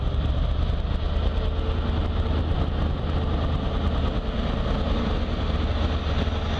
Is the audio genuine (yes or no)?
yes